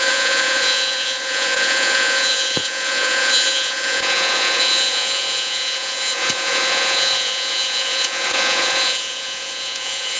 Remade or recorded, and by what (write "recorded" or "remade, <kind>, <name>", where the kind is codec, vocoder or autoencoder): remade, vocoder, Vocos